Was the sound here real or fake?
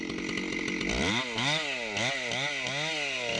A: real